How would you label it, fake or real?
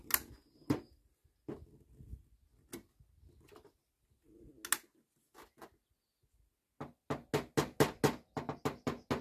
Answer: real